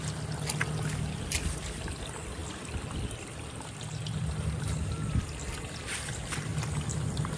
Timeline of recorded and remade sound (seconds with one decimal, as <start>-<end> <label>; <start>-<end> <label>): 0.0-7.4 recorded